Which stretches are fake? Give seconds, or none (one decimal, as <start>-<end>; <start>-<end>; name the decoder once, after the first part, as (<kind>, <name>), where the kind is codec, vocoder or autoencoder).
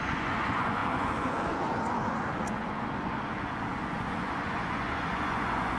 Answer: 0.0-5.8 (vocoder, Vocos)